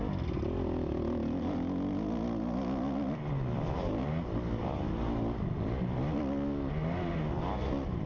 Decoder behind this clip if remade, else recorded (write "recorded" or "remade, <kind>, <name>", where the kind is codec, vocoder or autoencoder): recorded